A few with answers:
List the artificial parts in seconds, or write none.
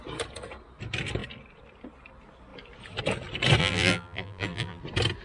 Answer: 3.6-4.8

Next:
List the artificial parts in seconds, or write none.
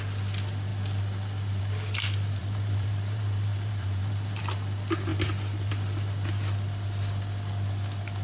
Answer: 2.4-4.4